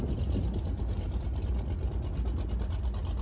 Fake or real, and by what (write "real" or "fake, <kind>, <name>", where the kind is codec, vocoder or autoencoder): real